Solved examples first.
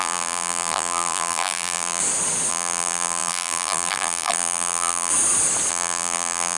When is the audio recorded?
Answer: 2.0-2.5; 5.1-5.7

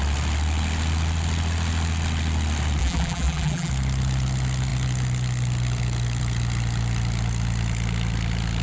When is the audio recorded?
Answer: 0.0-2.8; 3.7-8.6

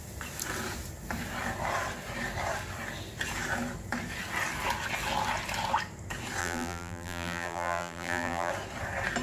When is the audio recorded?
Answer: 0.0-6.4; 8.5-9.2

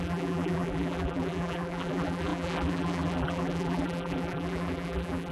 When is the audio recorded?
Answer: none

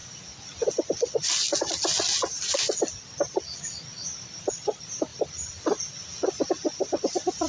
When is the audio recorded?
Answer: 0.0-7.5

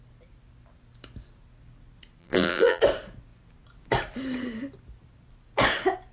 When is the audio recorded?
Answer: 0.0-2.2; 2.8-6.1

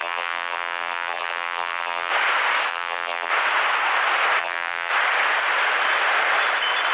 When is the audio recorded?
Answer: 2.1-2.7; 3.3-4.4; 4.9-6.9

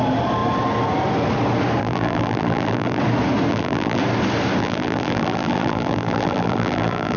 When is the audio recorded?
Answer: 0.0-1.8; 3.0-3.5; 4.0-4.6